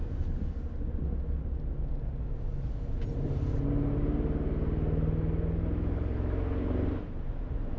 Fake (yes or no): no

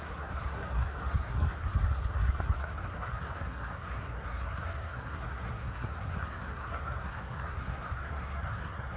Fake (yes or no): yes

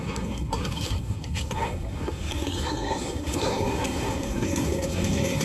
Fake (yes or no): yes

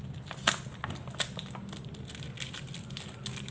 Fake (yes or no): no